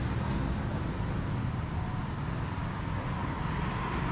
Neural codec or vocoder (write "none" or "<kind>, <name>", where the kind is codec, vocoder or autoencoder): none